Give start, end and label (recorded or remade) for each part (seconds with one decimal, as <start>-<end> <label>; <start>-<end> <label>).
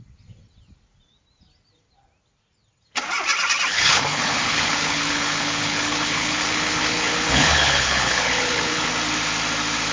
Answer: 0.0-3.7 recorded; 3.7-8.9 remade; 8.9-9.9 recorded